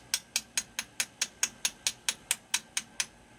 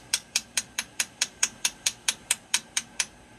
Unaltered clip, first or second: first